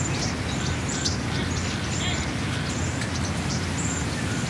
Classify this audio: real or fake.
real